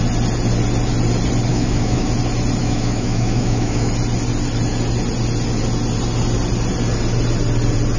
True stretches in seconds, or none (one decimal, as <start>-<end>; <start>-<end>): 0.0-1.5; 2.1-2.6; 3.9-8.0